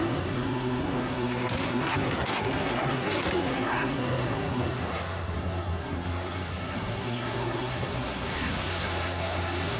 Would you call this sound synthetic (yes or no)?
yes